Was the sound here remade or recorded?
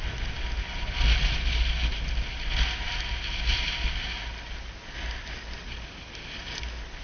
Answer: recorded